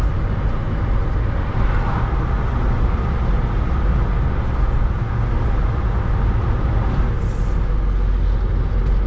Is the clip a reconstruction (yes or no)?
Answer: no